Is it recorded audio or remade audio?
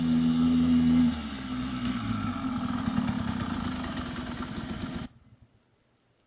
recorded